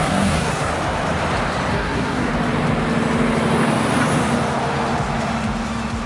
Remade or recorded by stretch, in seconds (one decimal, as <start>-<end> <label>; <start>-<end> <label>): 0.0-0.7 remade; 0.7-1.7 recorded; 1.7-2.3 remade; 2.3-6.1 recorded

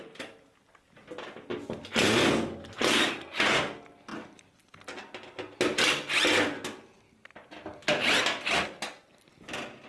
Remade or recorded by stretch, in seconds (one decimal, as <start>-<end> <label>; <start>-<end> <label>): 0.0-4.1 recorded; 4.1-4.7 remade; 4.7-9.9 recorded